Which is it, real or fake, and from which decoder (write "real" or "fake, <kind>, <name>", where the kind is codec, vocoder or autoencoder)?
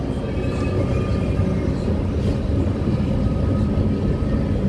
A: real